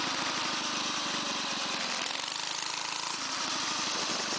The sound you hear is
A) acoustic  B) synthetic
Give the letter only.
A